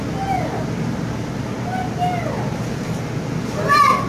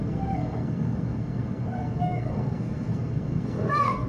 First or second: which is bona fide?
first